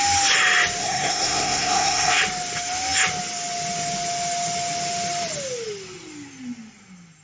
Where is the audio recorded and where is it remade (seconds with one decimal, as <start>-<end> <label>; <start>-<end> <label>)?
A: 0.0-0.8 recorded; 0.8-2.2 remade; 2.2-7.2 recorded